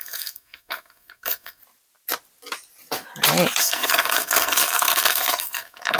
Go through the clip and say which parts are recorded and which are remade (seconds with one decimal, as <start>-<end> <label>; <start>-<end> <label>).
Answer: 0.0-1.6 remade; 1.6-3.6 recorded; 3.6-6.0 remade